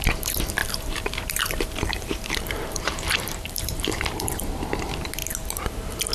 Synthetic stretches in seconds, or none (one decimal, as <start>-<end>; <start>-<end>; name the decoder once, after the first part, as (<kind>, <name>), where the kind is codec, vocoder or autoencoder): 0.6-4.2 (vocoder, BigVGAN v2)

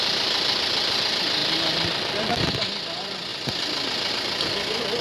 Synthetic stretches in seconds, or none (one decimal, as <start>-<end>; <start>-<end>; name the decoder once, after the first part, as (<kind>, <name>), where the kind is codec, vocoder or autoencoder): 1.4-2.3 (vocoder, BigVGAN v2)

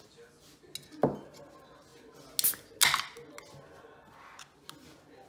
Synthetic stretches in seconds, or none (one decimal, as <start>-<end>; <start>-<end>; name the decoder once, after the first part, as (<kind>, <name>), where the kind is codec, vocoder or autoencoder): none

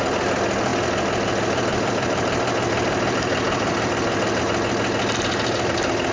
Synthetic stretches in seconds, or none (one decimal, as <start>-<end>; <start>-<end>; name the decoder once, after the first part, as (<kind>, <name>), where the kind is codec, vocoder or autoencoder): 0.7-4.4 (vocoder, BigVGAN v2)